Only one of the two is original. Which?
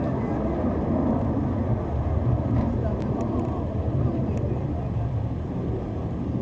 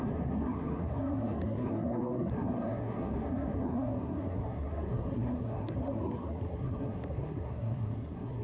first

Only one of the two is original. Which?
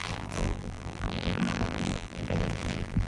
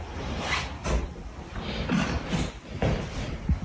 second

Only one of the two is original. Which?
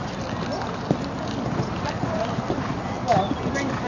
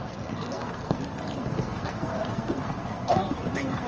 first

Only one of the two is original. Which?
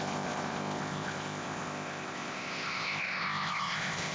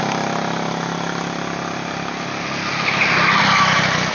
second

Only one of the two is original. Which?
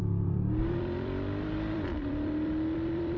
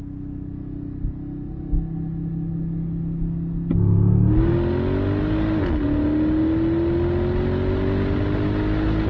second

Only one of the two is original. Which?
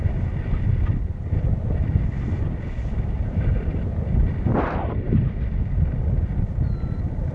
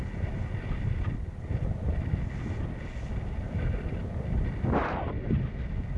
second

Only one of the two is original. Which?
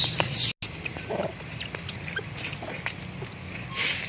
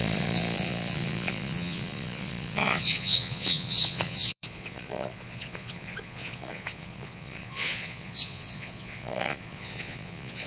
first